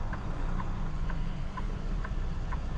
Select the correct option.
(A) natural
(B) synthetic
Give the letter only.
B